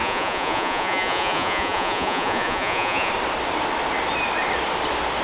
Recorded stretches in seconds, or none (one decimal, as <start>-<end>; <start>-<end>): 3.1-5.2